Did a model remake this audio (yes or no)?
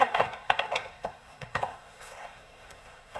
yes